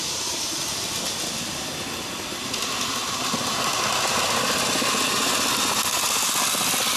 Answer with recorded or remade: recorded